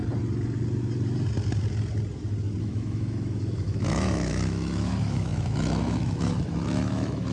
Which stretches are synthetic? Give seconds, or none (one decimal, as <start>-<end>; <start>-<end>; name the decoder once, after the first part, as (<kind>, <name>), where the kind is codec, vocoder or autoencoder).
2.6-7.3 (autoencoder, DAC-VAE)